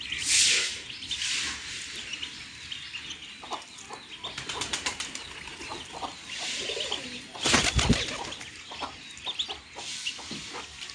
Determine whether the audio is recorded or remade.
recorded